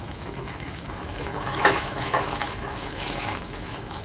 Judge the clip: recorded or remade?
remade